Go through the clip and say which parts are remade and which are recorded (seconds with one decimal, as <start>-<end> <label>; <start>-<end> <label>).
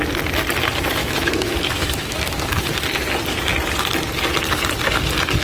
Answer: 0.0-1.0 recorded; 1.0-2.7 remade; 2.7-5.4 recorded